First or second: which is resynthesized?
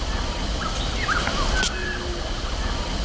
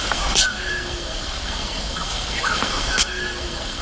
second